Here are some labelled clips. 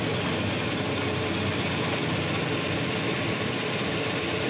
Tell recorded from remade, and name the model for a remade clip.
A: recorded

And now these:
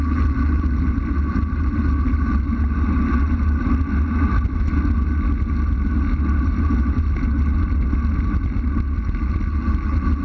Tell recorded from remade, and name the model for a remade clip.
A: recorded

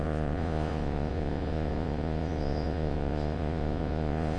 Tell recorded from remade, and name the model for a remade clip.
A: remade, vocoder, Vocos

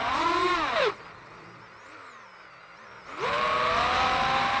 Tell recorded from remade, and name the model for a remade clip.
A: recorded